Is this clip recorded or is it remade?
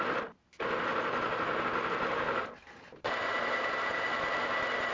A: recorded